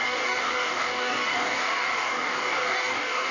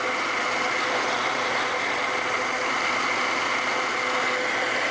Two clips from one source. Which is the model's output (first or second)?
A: first